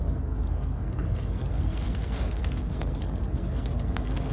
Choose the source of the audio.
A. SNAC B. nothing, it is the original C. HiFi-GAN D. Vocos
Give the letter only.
A